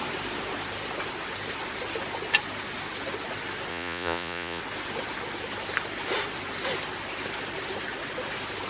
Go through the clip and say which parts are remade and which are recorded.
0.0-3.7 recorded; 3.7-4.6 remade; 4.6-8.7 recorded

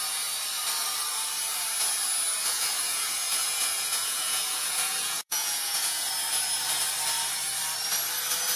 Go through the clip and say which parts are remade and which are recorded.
0.0-2.4 recorded; 2.4-6.1 remade; 6.1-8.6 recorded

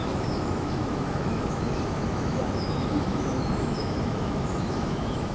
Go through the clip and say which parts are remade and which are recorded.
0.0-5.3 remade